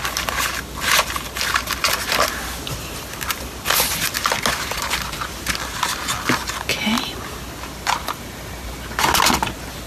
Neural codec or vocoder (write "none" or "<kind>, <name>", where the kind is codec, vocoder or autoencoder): none